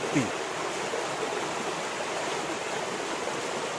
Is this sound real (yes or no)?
yes